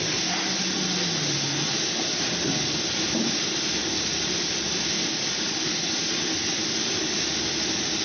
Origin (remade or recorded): recorded